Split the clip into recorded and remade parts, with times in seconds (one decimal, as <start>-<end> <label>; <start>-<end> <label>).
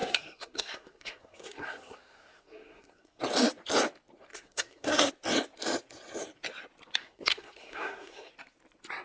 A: 0.0-3.2 remade; 3.2-4.3 recorded; 4.3-5.1 remade; 5.1-7.0 recorded; 7.0-8.3 remade; 8.3-9.0 recorded